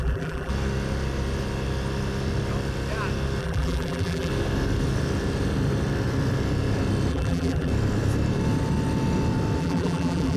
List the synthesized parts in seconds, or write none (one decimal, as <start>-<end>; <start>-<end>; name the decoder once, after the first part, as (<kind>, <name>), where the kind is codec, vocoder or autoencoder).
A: 0.0-0.5 (vocoder, BigVGAN v2); 3.4-4.3; 7.1-7.7; 9.6-10.4

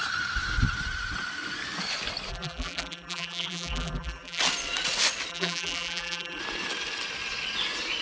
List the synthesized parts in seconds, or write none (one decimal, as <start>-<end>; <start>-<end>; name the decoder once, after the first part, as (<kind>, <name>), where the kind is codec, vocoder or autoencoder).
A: 2.3-4.4 (vocoder, BigVGAN v2); 5.3-6.4

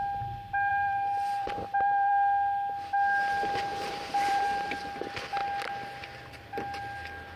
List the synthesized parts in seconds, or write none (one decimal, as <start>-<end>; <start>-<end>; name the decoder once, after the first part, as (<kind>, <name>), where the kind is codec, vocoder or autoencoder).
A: 0.7-2.1 (vocoder, BigVGAN v2); 3.7-4.8